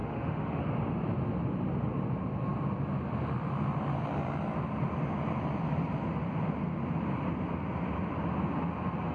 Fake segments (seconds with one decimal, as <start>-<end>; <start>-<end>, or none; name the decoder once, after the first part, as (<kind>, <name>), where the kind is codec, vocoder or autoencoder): 0.0-0.6 (autoencoder, DAC-VAE)